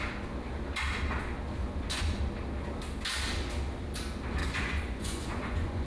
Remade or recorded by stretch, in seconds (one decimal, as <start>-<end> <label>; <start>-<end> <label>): 0.0-1.6 recorded; 1.6-2.2 remade; 2.2-4.4 recorded; 4.4-5.9 remade